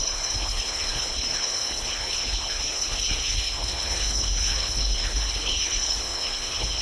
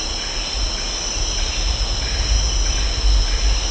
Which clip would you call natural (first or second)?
second